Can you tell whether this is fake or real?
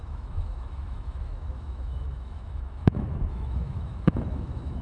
fake